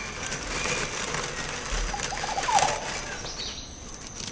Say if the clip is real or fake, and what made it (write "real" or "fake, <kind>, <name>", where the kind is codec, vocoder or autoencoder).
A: real